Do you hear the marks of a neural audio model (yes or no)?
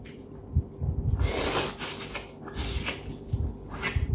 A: no